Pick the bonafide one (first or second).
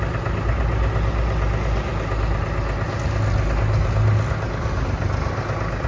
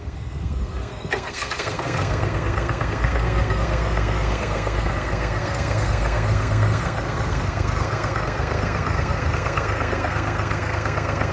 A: first